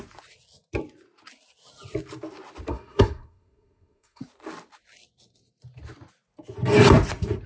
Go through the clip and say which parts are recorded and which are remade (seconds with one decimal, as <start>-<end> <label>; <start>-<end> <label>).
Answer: 0.0-2.7 recorded; 2.7-4.2 remade; 4.2-7.5 recorded